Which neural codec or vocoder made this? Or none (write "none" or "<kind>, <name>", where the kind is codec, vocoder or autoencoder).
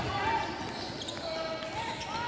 none